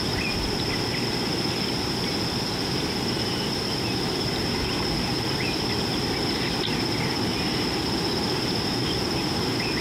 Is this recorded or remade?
recorded